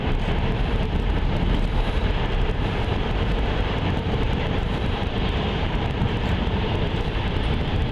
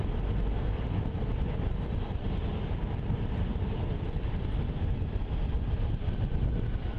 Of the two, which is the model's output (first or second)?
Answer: first